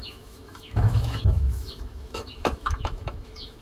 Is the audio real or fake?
fake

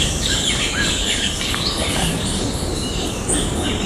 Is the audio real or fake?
fake